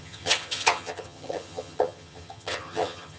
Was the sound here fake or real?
fake